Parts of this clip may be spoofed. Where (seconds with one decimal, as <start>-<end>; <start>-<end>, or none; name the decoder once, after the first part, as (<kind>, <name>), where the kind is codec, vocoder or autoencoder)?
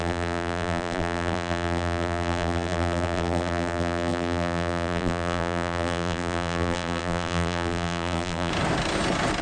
0.0-8.5 (vocoder, BigVGAN v2)